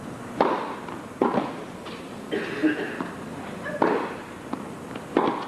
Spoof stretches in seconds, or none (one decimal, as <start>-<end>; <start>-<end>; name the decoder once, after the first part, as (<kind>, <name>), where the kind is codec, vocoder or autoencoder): 1.2-1.9 (vocoder, BigVGAN v2); 2.6-4.3